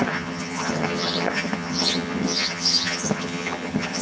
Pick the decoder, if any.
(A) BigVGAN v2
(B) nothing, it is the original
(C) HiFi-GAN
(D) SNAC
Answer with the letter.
C